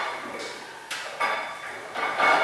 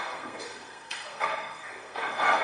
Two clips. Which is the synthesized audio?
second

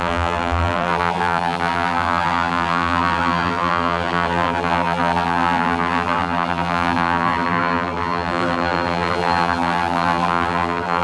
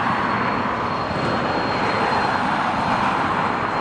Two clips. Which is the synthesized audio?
first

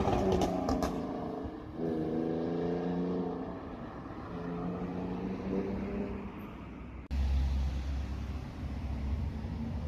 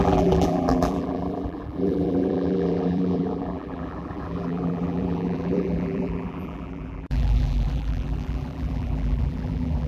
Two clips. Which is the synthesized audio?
second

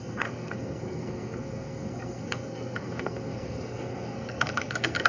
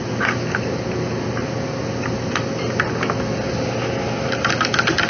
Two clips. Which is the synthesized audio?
first